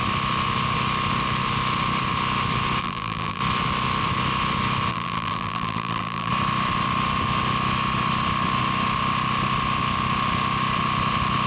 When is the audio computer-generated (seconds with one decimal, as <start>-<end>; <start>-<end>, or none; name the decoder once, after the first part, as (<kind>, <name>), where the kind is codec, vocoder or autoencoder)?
2.8-3.4 (vocoder, BigVGAN v2); 4.9-6.3